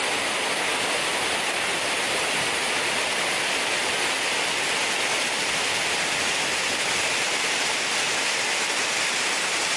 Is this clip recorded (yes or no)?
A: yes